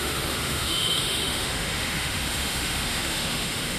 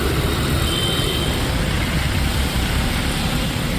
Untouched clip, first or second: second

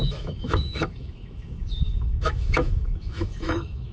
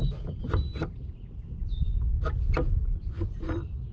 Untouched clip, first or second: second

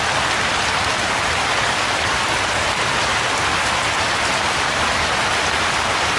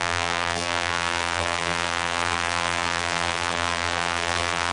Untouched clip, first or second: first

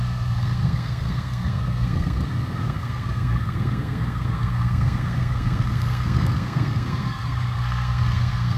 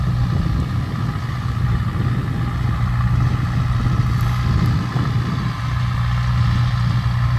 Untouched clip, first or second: second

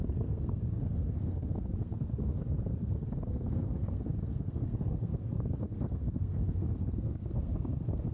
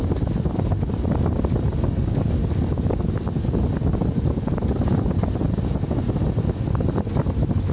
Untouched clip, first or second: second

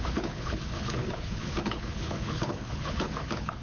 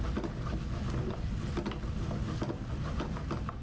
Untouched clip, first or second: second